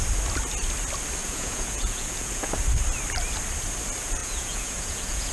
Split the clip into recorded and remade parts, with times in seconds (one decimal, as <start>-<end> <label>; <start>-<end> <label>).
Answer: 0.0-1.2 recorded; 1.2-2.5 remade; 2.5-4.2 recorded; 4.2-5.3 remade